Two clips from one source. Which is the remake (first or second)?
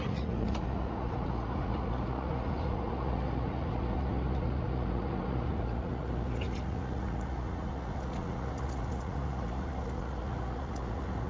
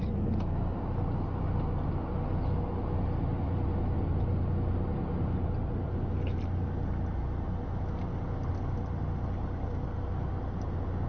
first